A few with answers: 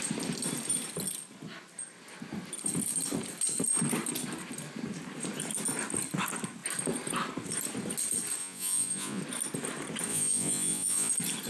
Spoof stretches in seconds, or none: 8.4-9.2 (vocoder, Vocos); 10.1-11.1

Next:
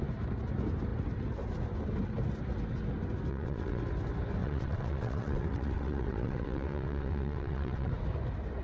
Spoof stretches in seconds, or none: 3.3-3.8 (vocoder, WaveNeXt); 4.4-7.9

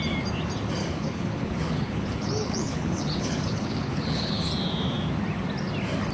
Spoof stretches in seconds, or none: 0.8-4.5 (codec, HILCodec)

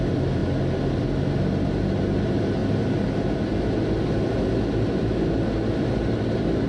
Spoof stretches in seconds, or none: none

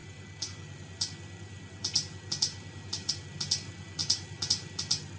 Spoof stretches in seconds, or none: none

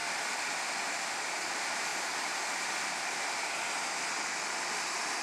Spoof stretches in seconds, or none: 1.9-3.5 (vocoder, BigVGAN v2)

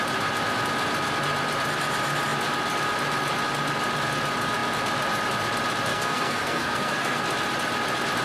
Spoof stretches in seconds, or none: 5.9-7.2 (codec, SNAC)